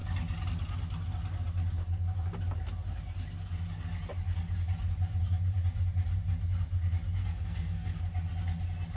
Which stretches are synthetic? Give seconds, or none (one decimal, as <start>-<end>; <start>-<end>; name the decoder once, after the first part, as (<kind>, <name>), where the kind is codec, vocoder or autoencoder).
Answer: 7.2-8.0 (codec, SNAC)